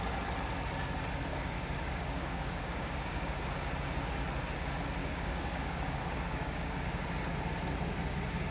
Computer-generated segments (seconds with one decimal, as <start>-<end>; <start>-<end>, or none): 1.3-3.4; 5.0-7.0